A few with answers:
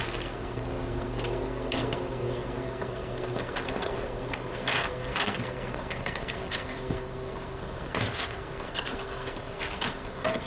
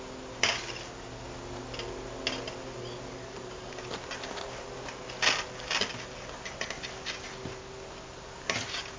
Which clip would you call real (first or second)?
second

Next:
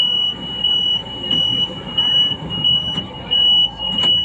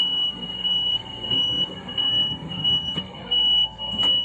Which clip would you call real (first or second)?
first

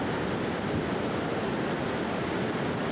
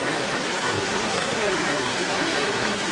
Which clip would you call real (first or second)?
first